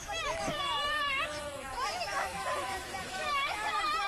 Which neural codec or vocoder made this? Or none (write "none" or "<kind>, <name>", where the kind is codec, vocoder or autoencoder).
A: autoencoder, DAC-VAE